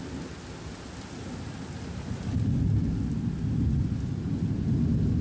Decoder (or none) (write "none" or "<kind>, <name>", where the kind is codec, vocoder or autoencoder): none